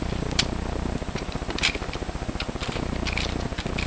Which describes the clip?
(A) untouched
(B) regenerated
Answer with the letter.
B